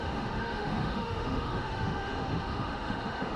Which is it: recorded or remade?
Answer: remade